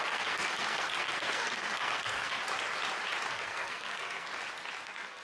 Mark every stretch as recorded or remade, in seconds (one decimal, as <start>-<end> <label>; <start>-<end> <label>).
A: 0.0-2.4 remade; 2.4-3.3 recorded; 3.3-4.3 remade; 4.3-4.8 recorded; 4.8-5.2 remade